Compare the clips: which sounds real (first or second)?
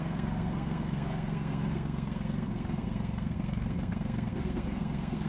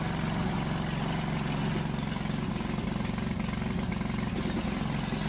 second